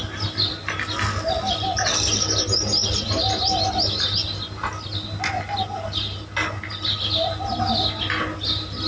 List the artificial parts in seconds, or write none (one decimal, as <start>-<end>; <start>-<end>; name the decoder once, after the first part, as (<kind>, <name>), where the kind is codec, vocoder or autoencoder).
none